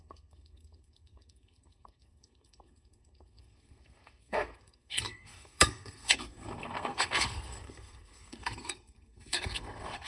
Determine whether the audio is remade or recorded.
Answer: remade